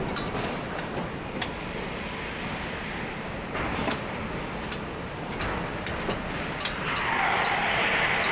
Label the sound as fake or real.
fake